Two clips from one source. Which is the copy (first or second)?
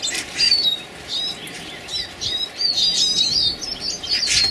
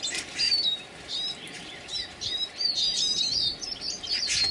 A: second